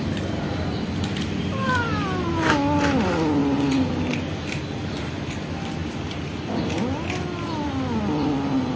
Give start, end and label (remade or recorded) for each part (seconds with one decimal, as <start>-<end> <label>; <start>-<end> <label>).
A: 0.0-8.8 recorded